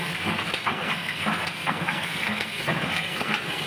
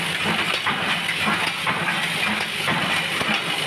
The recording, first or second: second